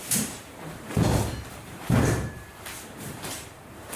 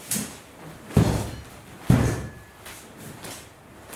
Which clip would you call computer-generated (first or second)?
first